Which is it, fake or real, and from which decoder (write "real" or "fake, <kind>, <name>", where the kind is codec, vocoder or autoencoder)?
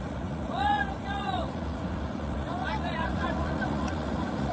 fake, vocoder, Vocos